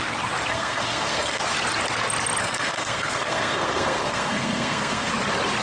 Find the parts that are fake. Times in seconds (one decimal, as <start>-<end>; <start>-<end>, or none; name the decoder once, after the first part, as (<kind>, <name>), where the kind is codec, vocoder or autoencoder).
0.5-1.4 (codec, SNAC); 2.4-5.1